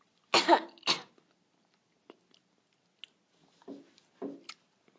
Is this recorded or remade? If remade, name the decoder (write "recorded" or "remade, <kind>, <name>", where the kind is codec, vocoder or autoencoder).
recorded